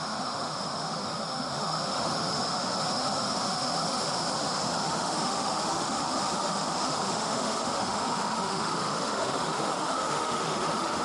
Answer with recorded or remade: remade